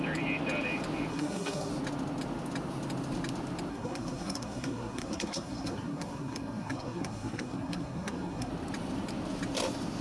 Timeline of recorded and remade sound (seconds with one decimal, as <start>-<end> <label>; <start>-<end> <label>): 0.0-1.1 recorded; 1.1-1.7 remade; 1.7-3.7 recorded; 3.7-8.5 remade; 8.5-10.0 recorded